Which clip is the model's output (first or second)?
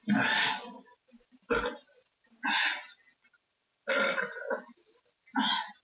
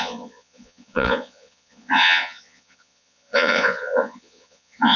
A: second